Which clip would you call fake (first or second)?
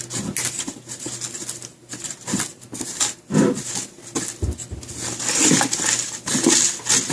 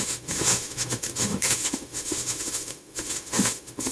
second